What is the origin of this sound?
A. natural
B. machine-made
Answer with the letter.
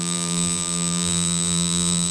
B